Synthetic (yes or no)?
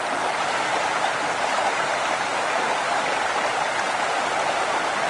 no